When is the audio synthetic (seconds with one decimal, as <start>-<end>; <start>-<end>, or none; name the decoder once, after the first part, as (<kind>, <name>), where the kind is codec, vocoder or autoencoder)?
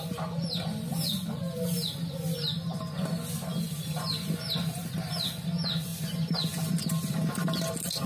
none